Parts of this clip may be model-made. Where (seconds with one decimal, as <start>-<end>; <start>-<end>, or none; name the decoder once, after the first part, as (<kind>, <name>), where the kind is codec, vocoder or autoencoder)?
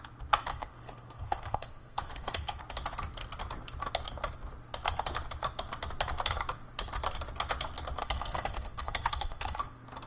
0.5-2.6 (codec, SNAC); 8.0-9.6